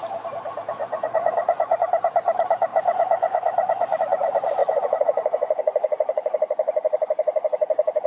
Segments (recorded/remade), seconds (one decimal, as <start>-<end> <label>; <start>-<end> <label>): 0.0-0.8 recorded; 0.8-1.8 remade; 1.8-2.7 recorded; 2.7-4.0 remade; 4.0-4.6 recorded; 4.6-8.1 remade